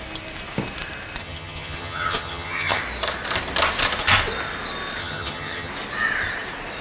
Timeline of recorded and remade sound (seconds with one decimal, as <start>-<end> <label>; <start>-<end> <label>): 0.0-1.2 recorded; 1.2-2.8 remade; 2.8-5.0 recorded; 5.0-5.7 remade; 5.7-6.8 recorded